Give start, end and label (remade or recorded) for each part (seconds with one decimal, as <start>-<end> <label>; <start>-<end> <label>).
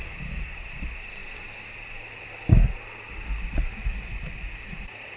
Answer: 0.0-5.2 recorded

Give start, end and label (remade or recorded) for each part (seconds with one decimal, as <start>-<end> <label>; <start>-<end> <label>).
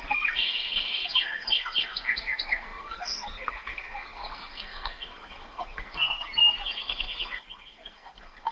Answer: 0.0-8.5 remade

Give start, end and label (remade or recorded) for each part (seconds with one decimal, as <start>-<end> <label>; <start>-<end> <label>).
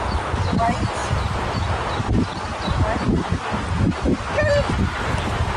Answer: 0.0-5.6 recorded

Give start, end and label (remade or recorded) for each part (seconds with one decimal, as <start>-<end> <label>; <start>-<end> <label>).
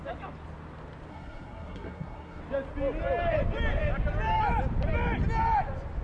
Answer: 0.0-1.1 recorded; 1.1-2.4 remade; 2.4-6.0 recorded